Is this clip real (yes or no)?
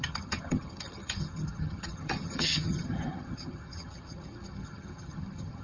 no